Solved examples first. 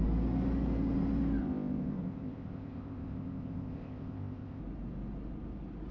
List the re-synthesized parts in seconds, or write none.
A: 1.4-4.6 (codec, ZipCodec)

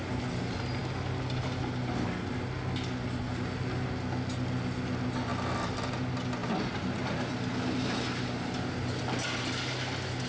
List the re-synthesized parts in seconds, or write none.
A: 5.3-5.9 (vocoder, BigVGAN v2)

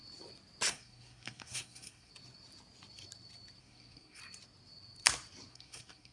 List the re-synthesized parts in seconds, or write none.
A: 0.7-2.1 (codec, SNAC); 3.6-4.2; 5.5-6.1

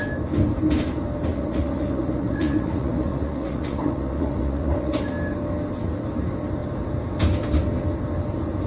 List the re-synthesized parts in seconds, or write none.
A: 1.3-5.0 (vocoder, Vocos)

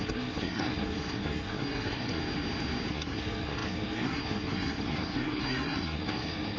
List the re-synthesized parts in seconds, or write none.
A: 0.0-2.2 (codec, SNAC); 2.9-6.6

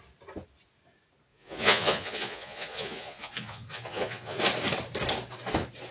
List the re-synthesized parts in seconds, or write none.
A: 1.3-4.4 (vocoder, Vocos)

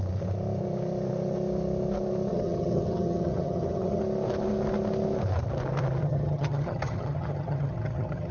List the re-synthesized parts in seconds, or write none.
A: 2.3-4.0 (vocoder, HiFi-GAN); 6.0-8.3